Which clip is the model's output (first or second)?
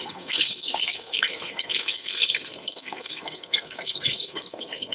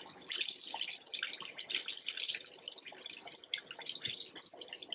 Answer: first